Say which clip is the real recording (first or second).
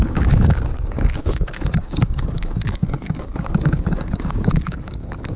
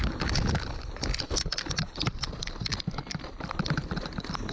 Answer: second